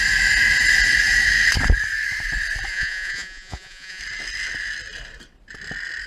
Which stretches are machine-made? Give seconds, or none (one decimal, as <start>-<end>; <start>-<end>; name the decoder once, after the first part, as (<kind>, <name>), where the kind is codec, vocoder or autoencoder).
2.7-4.0 (vocoder, Vocos)